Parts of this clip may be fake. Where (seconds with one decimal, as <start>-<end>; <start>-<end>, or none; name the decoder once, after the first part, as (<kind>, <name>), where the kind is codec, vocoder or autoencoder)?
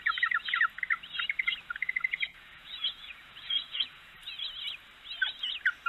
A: 2.3-4.1 (vocoder, Vocos)